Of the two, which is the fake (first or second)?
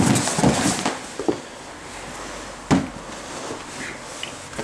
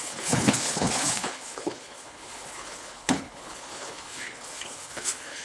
second